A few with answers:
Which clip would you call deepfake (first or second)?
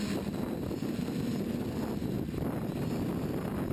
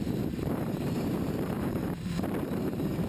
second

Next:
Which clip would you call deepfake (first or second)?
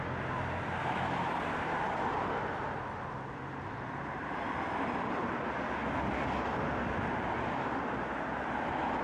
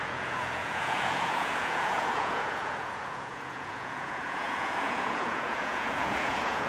second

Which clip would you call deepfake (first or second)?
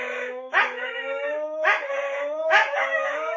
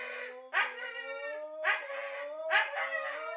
first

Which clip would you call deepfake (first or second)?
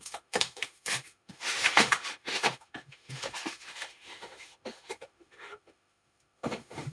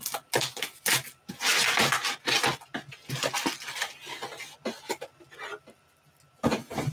first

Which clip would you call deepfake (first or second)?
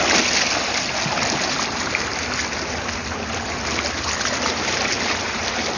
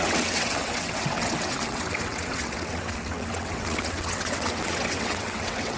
second